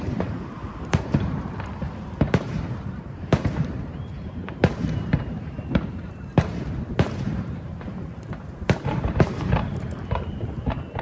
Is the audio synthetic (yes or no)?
yes